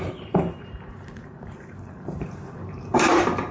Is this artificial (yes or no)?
yes